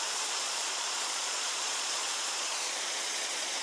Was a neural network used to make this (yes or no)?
yes